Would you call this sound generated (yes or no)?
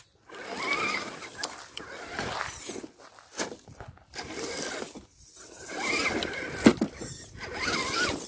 no